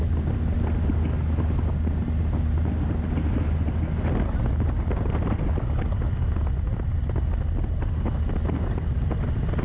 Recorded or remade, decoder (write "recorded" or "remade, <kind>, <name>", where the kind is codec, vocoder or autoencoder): recorded